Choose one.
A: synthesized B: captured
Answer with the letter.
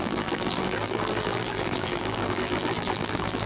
A